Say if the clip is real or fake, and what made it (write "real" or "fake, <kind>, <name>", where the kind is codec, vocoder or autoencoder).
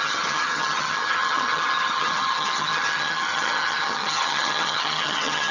fake, vocoder, HiFi-GAN